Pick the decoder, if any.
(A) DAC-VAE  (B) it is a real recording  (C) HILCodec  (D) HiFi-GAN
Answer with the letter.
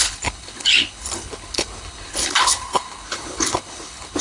C